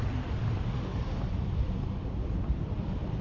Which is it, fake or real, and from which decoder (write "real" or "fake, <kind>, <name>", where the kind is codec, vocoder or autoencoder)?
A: fake, vocoder, BigVGAN v2